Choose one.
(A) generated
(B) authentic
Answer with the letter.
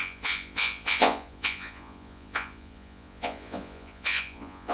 A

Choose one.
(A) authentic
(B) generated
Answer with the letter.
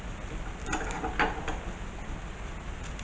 A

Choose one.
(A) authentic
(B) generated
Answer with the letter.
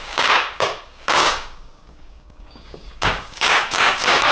B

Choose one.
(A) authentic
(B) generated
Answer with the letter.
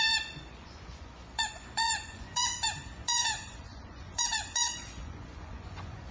B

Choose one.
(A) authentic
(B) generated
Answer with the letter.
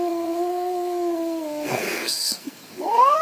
B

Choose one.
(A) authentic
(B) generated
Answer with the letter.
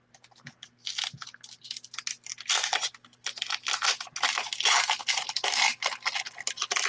A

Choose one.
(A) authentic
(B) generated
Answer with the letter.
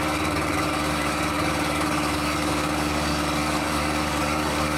B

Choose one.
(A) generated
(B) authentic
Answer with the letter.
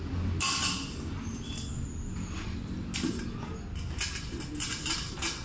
B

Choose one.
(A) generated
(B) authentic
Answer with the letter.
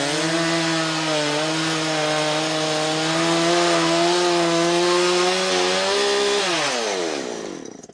B